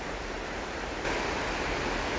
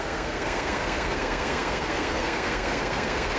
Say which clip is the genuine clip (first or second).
first